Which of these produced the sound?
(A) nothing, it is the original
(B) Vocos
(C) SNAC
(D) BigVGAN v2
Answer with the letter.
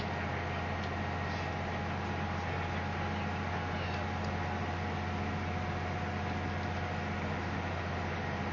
A